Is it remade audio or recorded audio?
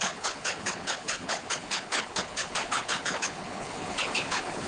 remade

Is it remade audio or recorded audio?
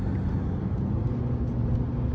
recorded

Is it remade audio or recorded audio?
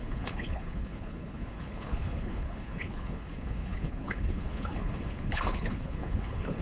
remade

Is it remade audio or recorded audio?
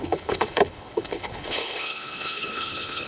remade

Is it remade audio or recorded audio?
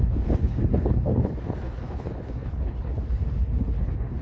remade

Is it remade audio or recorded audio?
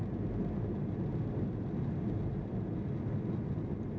recorded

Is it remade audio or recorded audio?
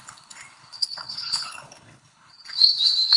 remade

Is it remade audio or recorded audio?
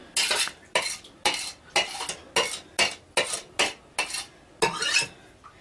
recorded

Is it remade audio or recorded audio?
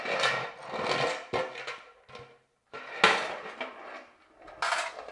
recorded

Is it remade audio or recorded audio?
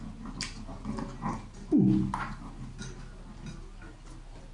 recorded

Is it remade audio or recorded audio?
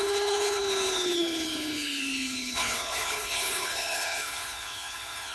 remade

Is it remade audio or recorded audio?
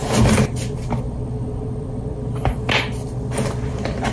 recorded